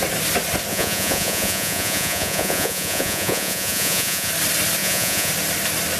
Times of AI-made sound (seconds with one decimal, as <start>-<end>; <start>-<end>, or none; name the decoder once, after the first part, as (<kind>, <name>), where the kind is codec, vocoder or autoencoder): 0.7-4.3 (vocoder, Vocos); 4.8-5.3